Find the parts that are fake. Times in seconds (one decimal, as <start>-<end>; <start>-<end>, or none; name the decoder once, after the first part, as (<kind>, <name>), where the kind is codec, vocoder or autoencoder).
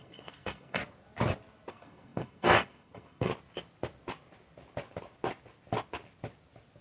0.0-0.8 (codec, SNAC); 1.7-3.3